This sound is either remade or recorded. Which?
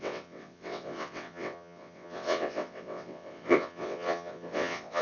remade